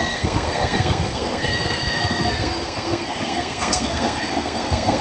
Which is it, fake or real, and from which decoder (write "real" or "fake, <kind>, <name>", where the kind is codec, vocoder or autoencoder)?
fake, codec, SNAC